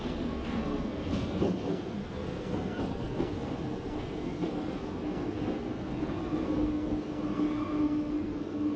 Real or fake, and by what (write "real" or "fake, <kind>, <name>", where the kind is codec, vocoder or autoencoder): fake, codec, SNAC